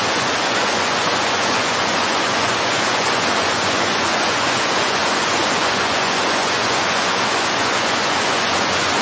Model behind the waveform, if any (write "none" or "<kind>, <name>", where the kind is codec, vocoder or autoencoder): vocoder, Vocos